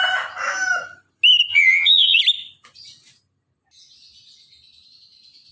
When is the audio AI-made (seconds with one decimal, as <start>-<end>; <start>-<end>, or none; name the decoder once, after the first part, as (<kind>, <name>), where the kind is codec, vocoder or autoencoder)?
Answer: 1.5-2.2 (vocoder, HiFi-GAN)